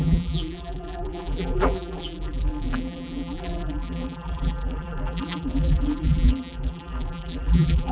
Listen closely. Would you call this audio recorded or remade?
remade